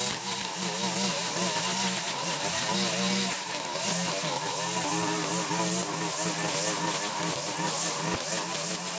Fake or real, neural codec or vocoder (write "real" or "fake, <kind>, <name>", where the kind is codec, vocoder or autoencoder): real